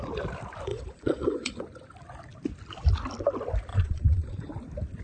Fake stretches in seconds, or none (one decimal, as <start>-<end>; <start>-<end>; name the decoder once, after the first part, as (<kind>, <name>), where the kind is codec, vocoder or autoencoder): 0.7-1.6 (vocoder, Vocos); 3.7-4.5